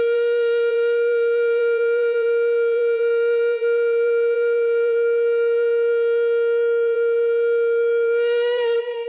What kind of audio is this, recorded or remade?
remade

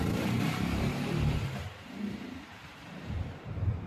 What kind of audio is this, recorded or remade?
remade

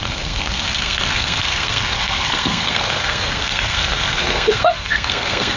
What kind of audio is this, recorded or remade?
remade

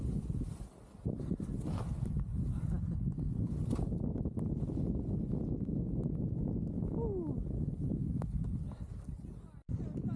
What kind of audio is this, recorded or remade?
recorded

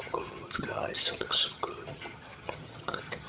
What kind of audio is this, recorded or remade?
remade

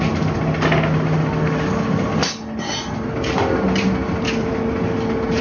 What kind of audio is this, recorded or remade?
recorded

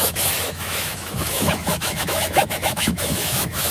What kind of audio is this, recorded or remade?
remade